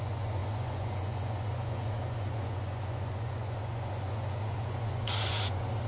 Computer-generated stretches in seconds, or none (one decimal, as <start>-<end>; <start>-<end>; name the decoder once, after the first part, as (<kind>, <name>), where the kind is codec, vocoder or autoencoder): 0.0-5.9 (vocoder, Vocos)